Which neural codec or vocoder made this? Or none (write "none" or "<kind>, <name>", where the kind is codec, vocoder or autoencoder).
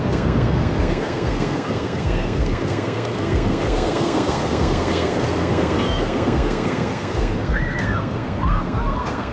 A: codec, SNAC